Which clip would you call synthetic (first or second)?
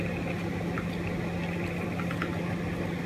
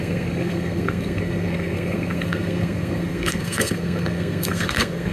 second